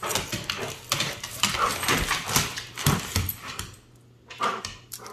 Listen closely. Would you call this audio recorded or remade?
recorded